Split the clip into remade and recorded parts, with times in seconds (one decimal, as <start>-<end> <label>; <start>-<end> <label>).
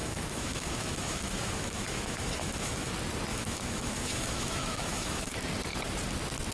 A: 0.0-2.9 remade; 2.9-3.3 recorded; 3.3-5.3 remade; 5.3-6.5 recorded